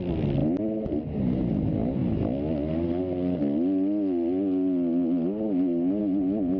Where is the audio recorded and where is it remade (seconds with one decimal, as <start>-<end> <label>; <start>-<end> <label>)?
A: 0.0-6.6 recorded

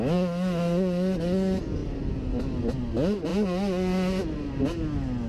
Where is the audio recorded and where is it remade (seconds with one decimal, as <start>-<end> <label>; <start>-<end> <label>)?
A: 0.0-5.3 recorded

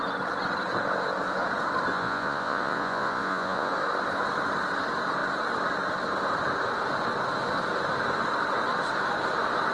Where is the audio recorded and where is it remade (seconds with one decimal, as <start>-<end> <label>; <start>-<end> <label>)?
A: 0.0-1.9 recorded; 1.9-3.7 remade; 3.7-9.7 recorded

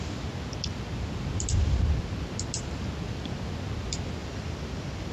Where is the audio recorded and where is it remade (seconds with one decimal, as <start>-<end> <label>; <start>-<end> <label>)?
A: 0.0-4.2 recorded; 4.2-5.1 remade

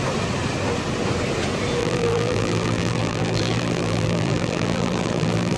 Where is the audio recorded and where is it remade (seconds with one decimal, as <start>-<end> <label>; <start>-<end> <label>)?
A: 0.0-1.8 recorded; 1.8-5.6 remade

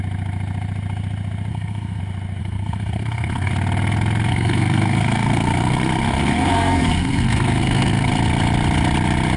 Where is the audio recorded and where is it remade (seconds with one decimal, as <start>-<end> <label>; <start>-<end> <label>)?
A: 0.0-1.5 recorded; 1.5-2.0 remade; 2.0-2.4 recorded; 2.4-3.5 remade; 3.5-4.3 recorded; 4.3-8.1 remade; 8.1-9.4 recorded